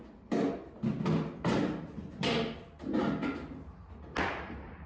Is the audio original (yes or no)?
yes